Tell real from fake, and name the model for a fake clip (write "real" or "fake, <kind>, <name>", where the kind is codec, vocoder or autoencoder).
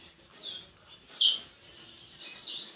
real